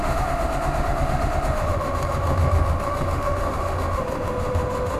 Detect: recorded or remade remade